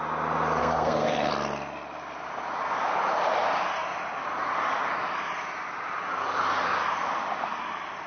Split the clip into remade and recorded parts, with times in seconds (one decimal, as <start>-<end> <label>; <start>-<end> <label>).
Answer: 0.0-0.6 recorded; 0.6-1.3 remade; 1.3-8.1 recorded